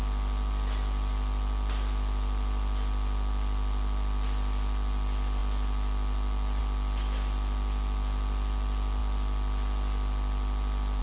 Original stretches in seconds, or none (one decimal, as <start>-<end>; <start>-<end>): 0.0-11.0